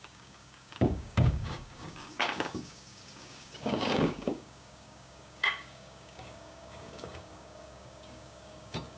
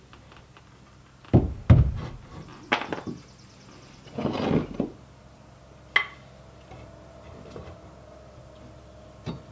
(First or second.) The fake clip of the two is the first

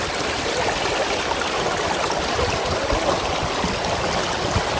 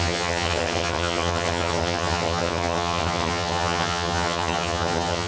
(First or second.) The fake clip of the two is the second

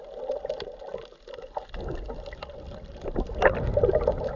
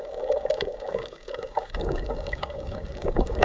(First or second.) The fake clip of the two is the second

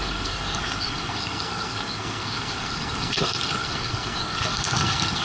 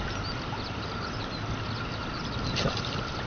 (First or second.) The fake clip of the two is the first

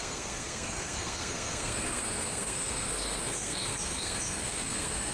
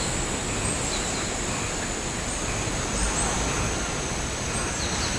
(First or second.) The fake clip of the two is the first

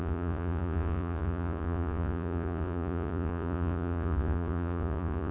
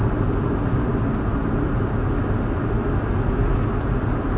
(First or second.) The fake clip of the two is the first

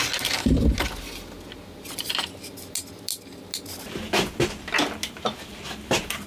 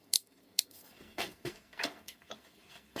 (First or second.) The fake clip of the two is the second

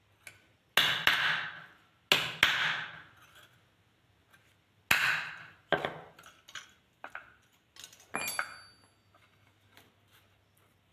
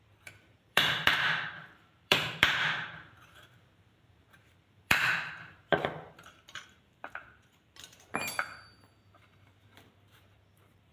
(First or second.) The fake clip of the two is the second